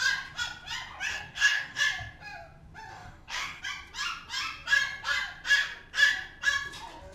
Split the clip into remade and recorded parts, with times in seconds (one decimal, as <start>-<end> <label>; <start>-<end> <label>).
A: 0.0-1.1 recorded; 1.1-1.8 remade; 1.8-2.9 recorded; 2.9-3.6 remade; 3.6-7.1 recorded